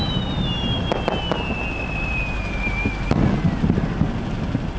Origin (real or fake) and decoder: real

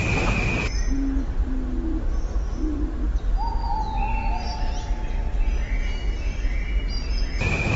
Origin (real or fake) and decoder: real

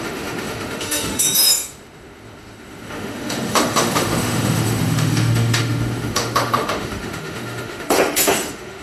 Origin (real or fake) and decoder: fake, autoencoder, DAC-VAE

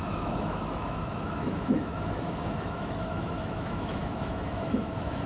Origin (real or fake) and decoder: fake, autoencoder, DAC-VAE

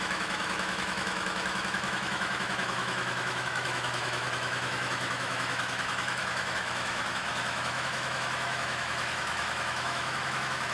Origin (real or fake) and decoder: fake, autoencoder, DAC-VAE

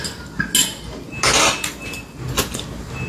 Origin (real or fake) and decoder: real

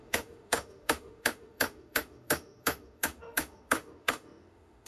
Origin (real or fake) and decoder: fake, autoencoder, DAC-VAE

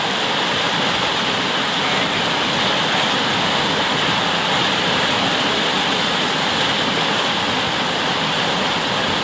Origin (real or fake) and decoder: real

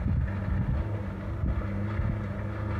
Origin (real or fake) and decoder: real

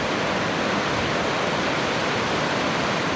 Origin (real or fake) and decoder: real